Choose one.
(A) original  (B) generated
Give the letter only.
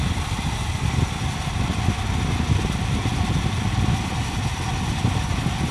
A